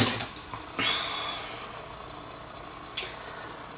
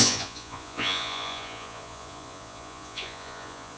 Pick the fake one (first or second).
second